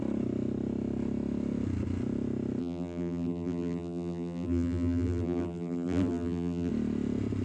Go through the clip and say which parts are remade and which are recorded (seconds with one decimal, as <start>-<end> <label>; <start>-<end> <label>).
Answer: 0.0-2.6 recorded; 2.6-6.7 remade; 6.7-7.4 recorded